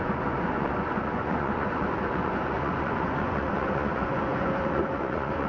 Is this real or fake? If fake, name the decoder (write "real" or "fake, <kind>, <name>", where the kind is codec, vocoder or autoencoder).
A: fake, vocoder, Vocos